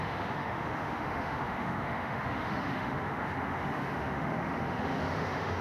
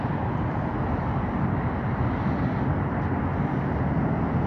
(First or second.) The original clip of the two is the second